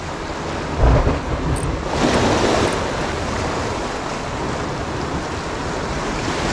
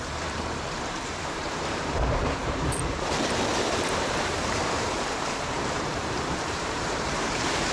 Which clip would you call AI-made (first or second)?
second